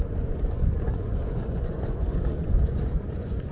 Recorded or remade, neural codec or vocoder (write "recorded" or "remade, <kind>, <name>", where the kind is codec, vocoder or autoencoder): remade, vocoder, Vocos